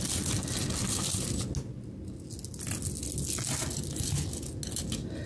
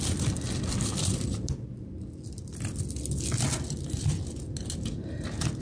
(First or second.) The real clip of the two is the first